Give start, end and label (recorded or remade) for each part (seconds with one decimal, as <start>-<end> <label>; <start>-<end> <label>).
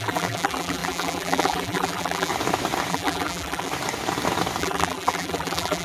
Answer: 0.0-2.3 remade; 2.3-2.9 recorded; 2.9-3.7 remade; 3.7-4.6 recorded; 4.6-5.8 remade